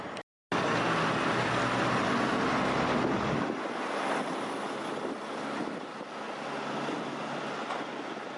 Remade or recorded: recorded